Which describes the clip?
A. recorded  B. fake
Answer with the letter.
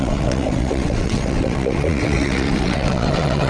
B